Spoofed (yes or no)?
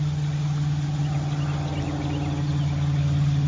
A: no